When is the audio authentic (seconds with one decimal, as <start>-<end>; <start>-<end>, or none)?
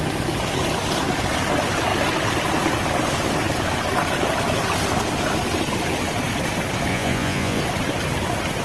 0.0-6.9; 7.6-8.6